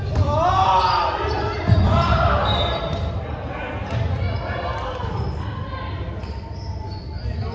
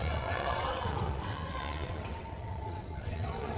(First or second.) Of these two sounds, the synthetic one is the second